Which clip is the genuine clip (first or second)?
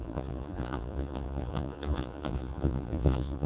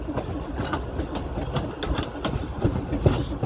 second